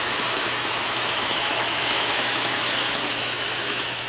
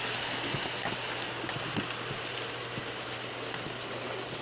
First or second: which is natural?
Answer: second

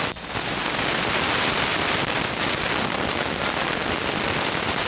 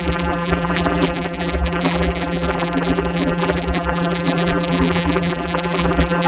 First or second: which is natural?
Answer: first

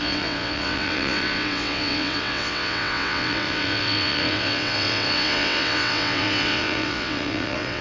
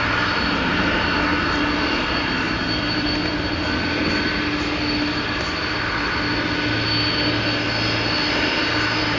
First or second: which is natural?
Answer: second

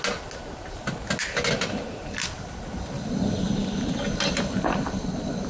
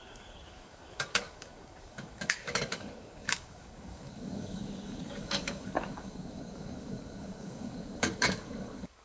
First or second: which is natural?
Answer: first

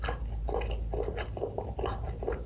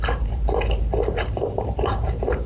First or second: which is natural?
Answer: first